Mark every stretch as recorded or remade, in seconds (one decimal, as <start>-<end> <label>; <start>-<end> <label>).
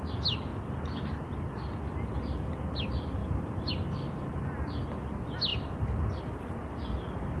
0.0-7.4 recorded